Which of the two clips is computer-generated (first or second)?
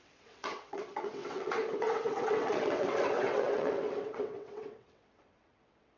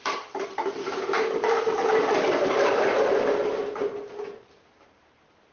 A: first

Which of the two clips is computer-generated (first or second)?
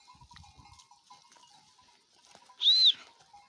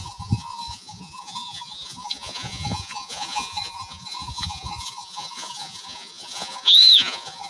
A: second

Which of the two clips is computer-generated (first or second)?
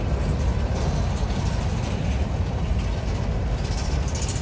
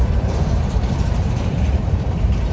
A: second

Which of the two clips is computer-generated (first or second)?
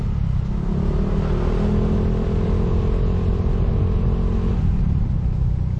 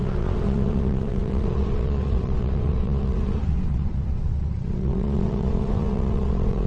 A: second